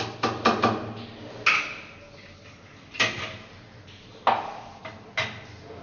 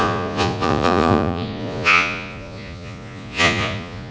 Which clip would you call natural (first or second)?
first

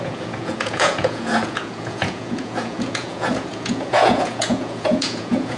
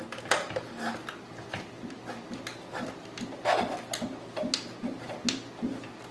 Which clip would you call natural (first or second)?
second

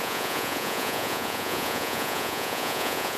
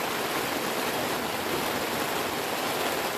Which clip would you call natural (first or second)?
second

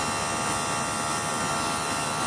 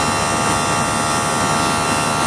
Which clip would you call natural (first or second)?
second